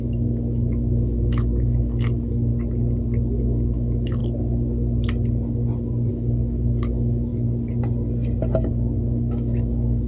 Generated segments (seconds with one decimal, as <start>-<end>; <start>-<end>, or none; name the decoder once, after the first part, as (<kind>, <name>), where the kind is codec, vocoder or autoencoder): 0.0-2.5 (autoencoder, DAC-VAE); 3.4-4.2; 6.1-7.3; 8.7-10.1